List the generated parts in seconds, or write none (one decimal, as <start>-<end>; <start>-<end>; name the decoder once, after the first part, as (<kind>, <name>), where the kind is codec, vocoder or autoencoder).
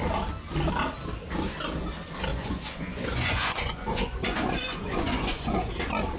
2.3-5.7 (vocoder, Vocos)